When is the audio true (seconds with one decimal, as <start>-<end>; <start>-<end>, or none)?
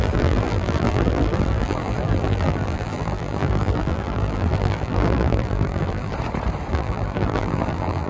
6.1-6.7